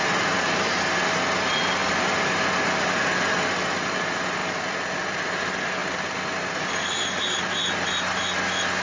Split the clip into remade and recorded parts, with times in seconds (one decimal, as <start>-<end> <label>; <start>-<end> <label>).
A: 0.0-1.8 recorded; 1.8-2.4 remade; 2.4-4.4 recorded; 4.4-5.3 remade; 5.3-8.8 recorded